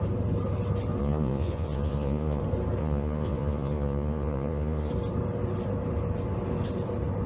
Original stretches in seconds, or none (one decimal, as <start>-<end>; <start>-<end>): 0.0-1.0; 2.4-2.8; 4.9-7.3